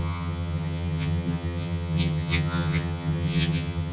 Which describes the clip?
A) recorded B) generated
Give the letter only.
B